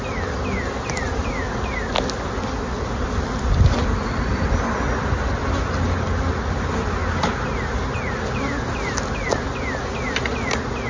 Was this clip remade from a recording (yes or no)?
no